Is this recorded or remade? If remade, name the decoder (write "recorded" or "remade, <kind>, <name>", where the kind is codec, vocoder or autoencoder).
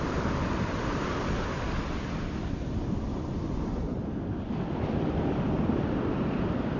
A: remade, vocoder, BigVGAN v2